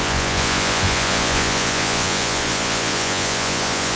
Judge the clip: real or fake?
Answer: fake